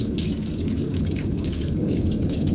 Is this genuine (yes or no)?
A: no